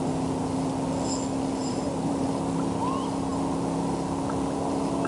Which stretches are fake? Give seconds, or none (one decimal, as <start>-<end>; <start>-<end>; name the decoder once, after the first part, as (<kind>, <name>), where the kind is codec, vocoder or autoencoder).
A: 1.6-2.3 (vocoder, BigVGAN v2)